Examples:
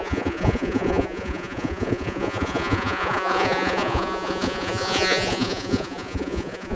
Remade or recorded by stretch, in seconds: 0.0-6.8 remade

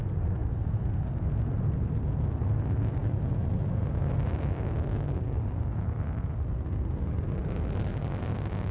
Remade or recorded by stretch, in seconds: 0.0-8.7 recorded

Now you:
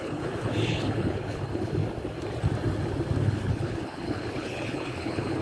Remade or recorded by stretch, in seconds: 0.0-1.8 remade; 1.8-3.2 recorded; 3.2-5.4 remade

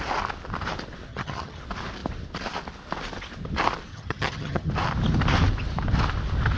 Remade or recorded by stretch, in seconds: 0.0-1.1 recorded; 1.1-1.6 remade; 1.6-3.9 recorded; 3.9-4.7 remade; 4.7-6.6 recorded

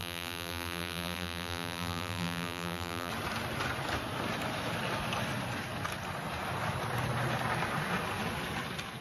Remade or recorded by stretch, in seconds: 0.0-3.1 remade; 3.1-9.0 recorded